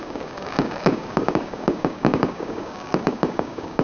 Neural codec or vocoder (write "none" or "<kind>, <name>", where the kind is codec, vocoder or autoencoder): codec, DAC